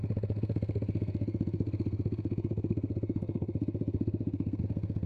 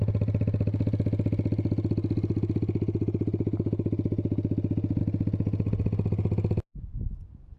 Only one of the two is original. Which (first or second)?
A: second